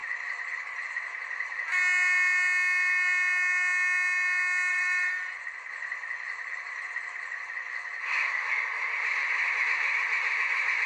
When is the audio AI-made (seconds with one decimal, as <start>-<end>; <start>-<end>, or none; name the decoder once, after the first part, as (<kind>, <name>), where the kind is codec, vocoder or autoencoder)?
0.0-1.0 (vocoder, BigVGAN v2); 4.7-7.4